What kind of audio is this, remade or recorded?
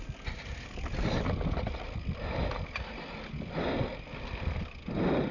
recorded